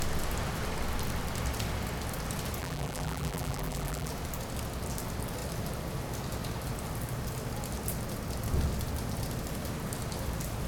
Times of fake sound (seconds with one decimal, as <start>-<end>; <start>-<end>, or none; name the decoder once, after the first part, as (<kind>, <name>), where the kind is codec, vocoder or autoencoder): 2.6-4.1 (vocoder, BigVGAN v2)